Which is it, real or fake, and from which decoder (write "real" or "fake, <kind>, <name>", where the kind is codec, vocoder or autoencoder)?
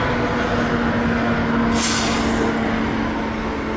real